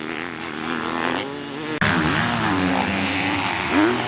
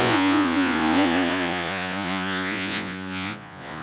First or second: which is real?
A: first